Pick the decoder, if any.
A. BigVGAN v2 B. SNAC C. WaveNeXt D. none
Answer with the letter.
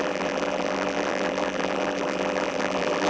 A